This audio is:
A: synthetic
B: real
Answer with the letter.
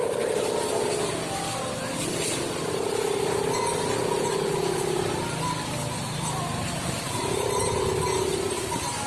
B